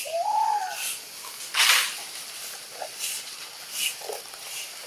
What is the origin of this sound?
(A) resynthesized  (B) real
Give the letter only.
B